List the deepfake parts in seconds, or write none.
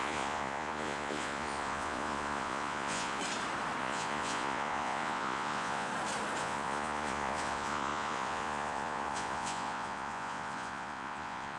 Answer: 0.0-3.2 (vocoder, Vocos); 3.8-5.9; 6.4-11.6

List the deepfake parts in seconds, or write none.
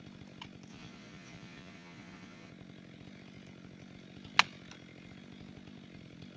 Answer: 0.7-2.5 (vocoder, Vocos)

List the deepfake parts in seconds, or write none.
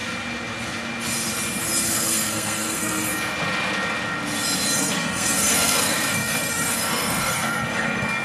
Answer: 1.8-3.1 (codec, SNAC); 4.8-8.2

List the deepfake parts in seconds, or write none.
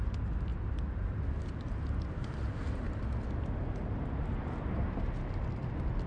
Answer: none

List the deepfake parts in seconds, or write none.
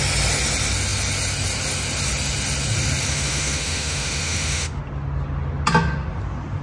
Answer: 3.1-4.8 (autoencoder, DAC-VAE)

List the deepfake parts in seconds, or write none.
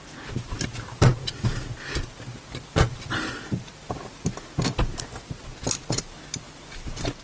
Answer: none